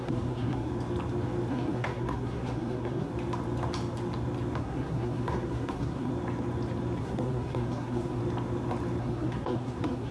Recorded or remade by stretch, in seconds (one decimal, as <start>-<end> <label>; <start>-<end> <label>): 0.0-0.7 remade; 0.7-1.5 recorded; 1.5-3.1 remade; 3.1-4.6 recorded; 4.6-6.1 remade; 6.1-7.0 recorded; 7.0-8.2 remade; 8.2-9.0 recorded; 9.0-10.1 remade